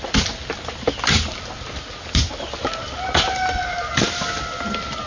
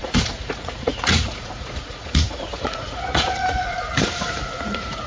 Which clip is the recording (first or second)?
first